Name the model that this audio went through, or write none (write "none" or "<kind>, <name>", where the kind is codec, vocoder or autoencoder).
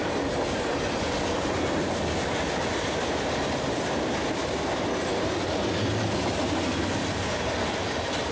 none